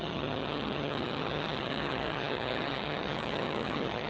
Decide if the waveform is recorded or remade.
remade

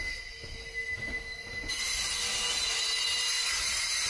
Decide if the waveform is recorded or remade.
recorded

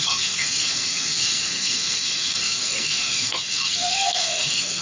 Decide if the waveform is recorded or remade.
remade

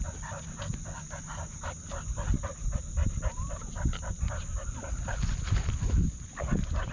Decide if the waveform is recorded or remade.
recorded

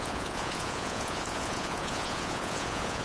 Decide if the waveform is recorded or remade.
remade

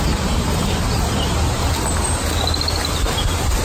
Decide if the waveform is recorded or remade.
recorded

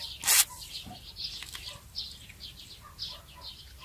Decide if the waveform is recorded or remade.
recorded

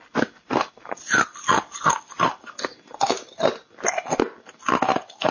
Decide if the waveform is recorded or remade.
recorded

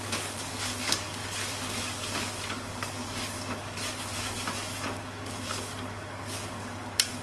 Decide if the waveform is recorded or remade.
remade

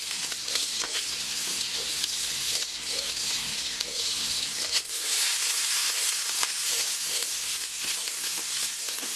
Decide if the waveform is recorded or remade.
remade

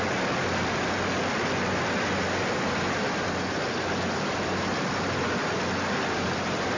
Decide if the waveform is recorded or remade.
recorded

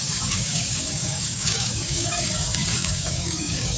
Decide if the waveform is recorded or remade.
remade